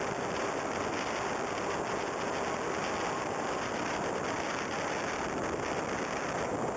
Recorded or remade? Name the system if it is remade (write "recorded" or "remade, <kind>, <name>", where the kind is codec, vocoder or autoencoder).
recorded